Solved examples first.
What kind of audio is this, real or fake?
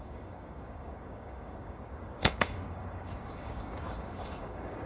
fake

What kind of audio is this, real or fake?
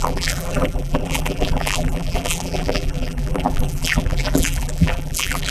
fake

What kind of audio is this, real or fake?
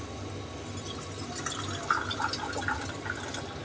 real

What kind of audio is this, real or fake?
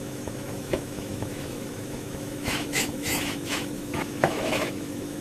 fake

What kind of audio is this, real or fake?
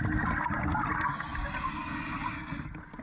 real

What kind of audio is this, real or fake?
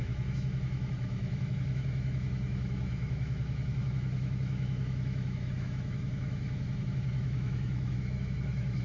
fake